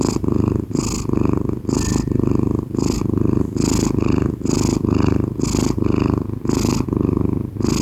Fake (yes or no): no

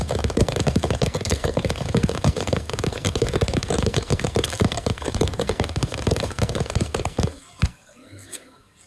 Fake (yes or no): yes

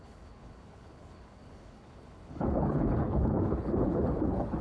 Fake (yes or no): yes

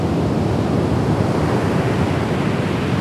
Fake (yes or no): no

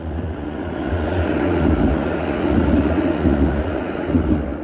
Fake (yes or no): yes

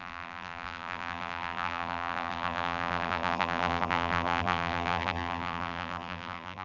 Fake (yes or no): yes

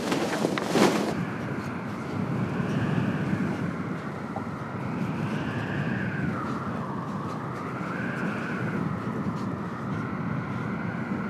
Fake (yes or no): no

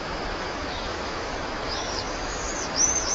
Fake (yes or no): yes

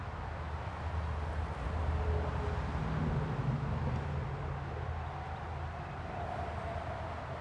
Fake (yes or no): no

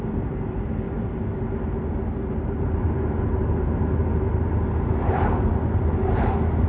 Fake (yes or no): no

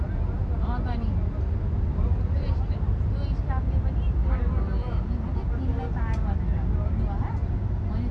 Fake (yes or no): no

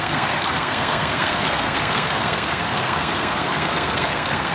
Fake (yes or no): yes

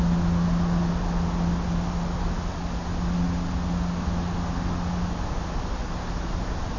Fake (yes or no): no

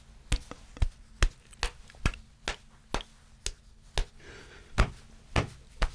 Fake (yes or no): no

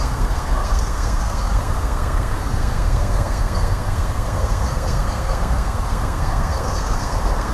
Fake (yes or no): yes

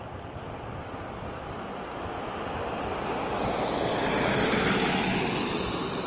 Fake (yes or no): no